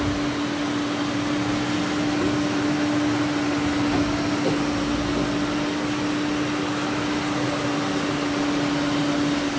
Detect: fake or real real